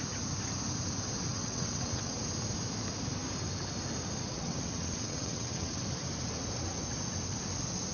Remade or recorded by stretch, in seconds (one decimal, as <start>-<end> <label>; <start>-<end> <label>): 0.0-1.3 recorded; 1.3-2.2 remade; 2.2-4.3 recorded; 4.3-5.8 remade; 5.8-7.9 recorded